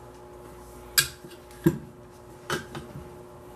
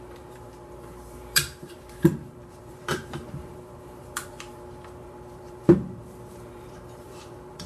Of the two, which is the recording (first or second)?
first